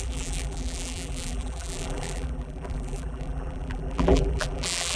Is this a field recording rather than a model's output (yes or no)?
no